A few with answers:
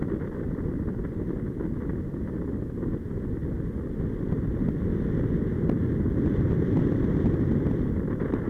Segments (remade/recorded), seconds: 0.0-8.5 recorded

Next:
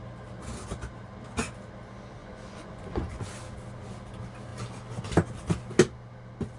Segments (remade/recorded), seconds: 0.0-2.2 recorded; 2.2-3.2 remade; 3.2-6.6 recorded